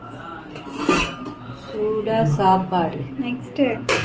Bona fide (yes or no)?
yes